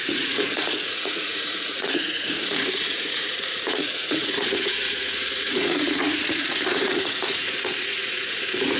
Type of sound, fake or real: fake